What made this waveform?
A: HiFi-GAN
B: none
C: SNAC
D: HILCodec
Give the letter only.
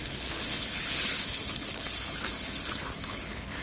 D